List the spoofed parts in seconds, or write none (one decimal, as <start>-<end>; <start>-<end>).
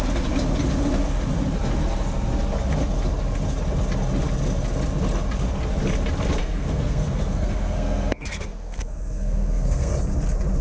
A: 6.4-9.9